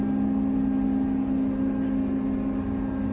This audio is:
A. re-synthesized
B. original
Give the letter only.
B